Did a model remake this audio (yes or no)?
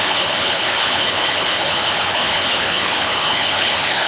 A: yes